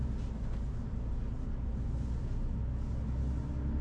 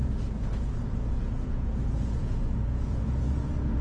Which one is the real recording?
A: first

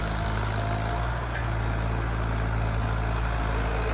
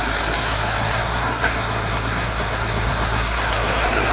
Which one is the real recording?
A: first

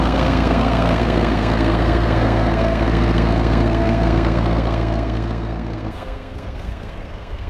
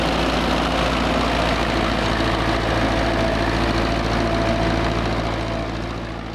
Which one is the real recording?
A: second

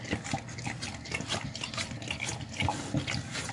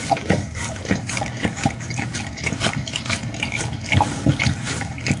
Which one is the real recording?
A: first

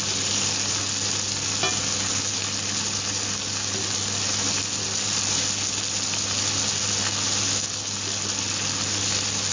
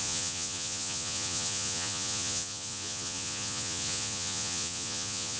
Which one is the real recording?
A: first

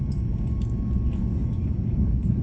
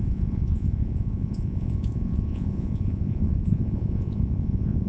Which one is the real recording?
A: first